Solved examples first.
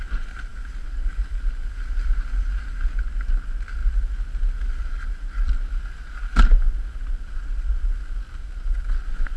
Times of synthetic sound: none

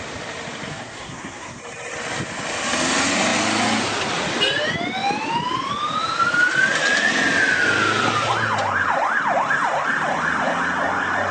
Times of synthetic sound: 0.7-1.6 (codec, SNAC)

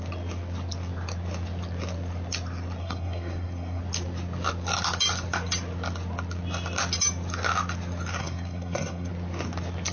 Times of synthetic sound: 2.8-3.8 (codec, SNAC); 8.2-9.1

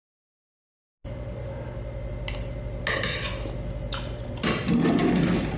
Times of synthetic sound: none

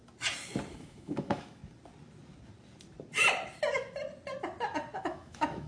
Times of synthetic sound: 0.7-1.6 (autoencoder, DAC-VAE); 5.0-5.7

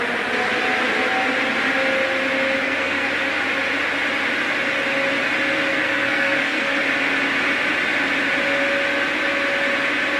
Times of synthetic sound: 2.6-3.1 (codec, SNAC); 5.7-6.8

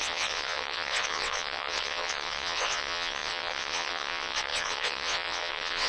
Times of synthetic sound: 0.0-5.9 (vocoder, WaveNeXt)

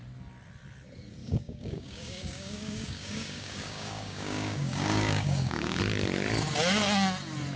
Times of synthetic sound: 1.2-5.8 (codec, DAC)